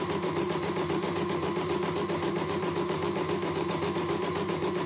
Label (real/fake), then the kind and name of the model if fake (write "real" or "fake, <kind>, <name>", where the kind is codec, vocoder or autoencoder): fake, vocoder, BigVGAN v2